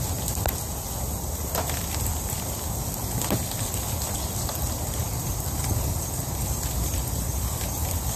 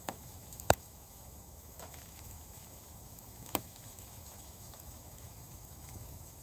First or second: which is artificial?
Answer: second